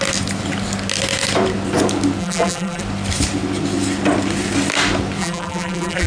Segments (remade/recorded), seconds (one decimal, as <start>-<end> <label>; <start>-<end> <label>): 0.0-2.2 recorded; 2.2-2.8 remade; 2.8-5.2 recorded; 5.2-6.1 remade